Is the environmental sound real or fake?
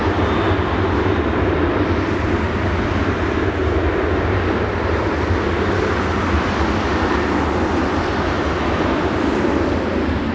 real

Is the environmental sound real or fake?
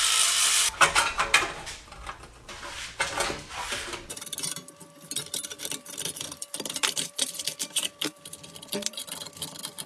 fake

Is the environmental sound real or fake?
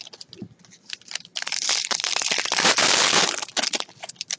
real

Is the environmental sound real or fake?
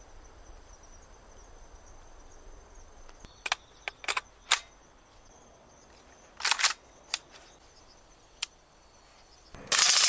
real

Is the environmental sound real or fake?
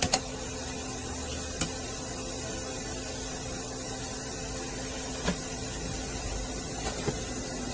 real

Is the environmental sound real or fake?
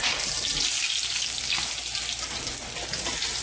real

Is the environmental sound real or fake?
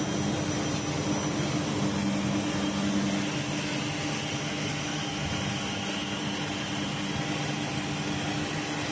real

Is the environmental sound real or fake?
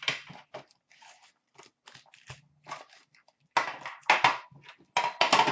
real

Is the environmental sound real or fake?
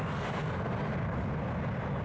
real